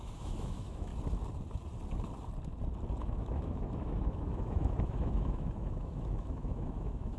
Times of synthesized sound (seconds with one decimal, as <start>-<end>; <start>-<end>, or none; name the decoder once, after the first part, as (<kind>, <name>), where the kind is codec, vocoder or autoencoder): 0.0-0.9 (autoencoder, DAC-VAE); 3.0-7.2